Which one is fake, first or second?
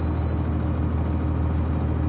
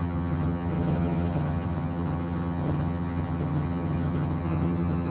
second